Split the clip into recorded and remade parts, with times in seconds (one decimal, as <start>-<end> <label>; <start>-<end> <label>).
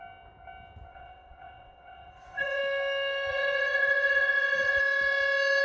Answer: 0.0-0.9 recorded; 0.9-2.6 remade; 2.6-3.3 recorded; 3.3-4.8 remade; 4.8-5.6 recorded